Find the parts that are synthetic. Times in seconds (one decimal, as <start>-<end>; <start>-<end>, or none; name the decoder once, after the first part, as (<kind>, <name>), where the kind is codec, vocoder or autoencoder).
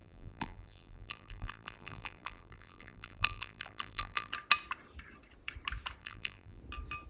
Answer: 0.0-4.3 (vocoder, BigVGAN v2); 6.0-6.6